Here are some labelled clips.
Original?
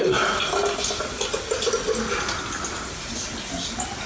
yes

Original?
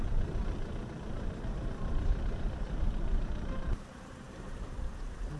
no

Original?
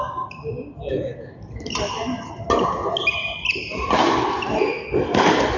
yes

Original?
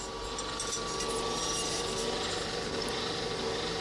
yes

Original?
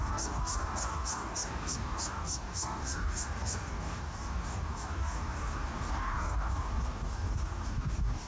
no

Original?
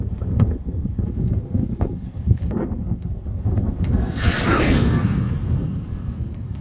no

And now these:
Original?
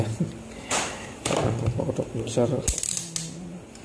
yes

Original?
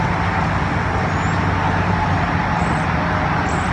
yes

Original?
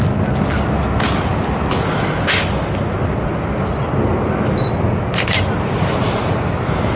yes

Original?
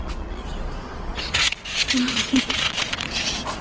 no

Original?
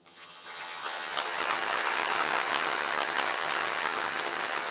no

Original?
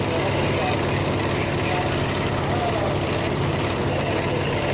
yes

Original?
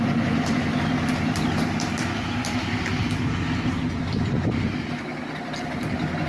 yes